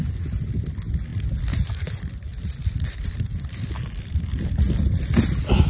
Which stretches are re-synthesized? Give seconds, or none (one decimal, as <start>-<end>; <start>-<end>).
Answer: 1.1-4.5